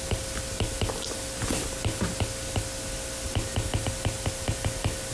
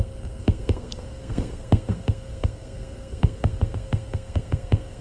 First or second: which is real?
first